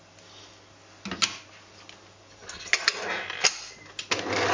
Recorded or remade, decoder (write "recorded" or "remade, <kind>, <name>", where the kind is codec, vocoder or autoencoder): recorded